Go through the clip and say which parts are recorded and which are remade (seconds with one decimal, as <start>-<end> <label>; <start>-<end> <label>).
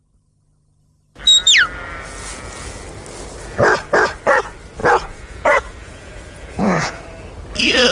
0.0-4.8 recorded; 4.8-7.0 remade; 7.0-7.9 recorded